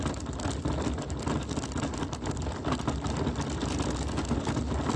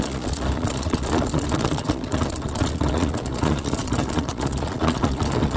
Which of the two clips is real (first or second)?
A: first